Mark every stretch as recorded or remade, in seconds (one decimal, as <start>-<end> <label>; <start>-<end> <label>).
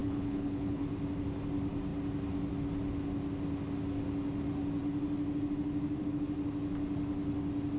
0.0-0.8 remade; 0.8-7.8 recorded